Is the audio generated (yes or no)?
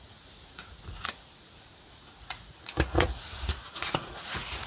yes